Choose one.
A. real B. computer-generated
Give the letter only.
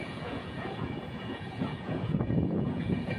B